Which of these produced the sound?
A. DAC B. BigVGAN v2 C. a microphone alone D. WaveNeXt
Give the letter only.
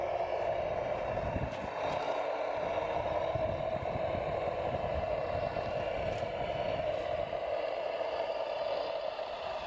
C